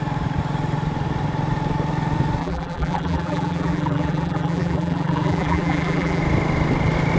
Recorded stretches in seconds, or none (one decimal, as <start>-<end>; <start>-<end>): 0.0-2.4; 6.2-7.2